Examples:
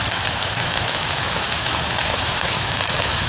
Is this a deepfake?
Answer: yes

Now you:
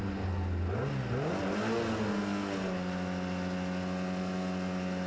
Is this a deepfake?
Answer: no